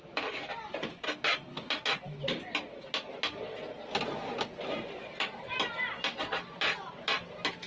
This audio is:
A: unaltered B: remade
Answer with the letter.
A